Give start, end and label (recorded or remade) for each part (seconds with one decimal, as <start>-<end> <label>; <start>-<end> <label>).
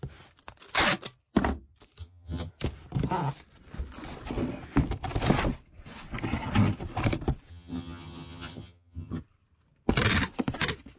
0.0-2.0 recorded; 2.0-2.5 remade; 2.5-7.5 recorded; 7.5-9.2 remade; 9.2-11.0 recorded